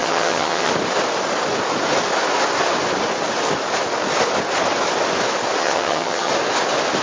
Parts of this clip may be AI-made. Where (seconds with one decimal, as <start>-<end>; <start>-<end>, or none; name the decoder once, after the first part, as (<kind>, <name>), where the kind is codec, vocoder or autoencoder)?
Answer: 0.0-0.7 (vocoder, HiFi-GAN); 5.6-6.3